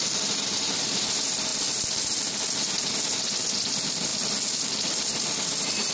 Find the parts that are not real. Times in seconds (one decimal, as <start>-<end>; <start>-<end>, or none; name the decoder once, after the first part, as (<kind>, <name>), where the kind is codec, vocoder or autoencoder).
none

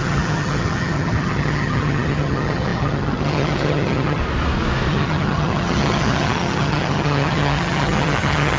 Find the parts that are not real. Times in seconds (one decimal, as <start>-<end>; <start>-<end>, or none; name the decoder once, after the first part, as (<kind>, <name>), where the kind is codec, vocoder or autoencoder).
0.0-4.2 (vocoder, HiFi-GAN); 4.9-8.6